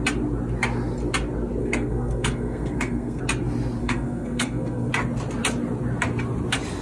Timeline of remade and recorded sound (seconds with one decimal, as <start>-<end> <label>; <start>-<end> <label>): 0.0-1.6 recorded; 1.6-3.2 remade; 3.2-3.8 recorded; 3.8-4.9 remade; 4.9-6.8 recorded